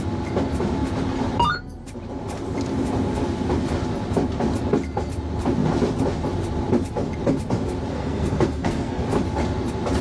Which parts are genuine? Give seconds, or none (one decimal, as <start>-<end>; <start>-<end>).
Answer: 0.0-7.9; 9.0-10.0